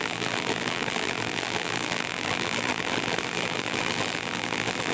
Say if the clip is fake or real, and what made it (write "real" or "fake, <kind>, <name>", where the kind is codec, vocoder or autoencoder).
fake, vocoder, BigVGAN v2